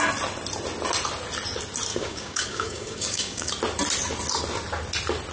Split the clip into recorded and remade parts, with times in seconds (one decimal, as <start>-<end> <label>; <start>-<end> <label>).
0.0-1.9 recorded; 1.9-3.5 remade; 3.5-5.3 recorded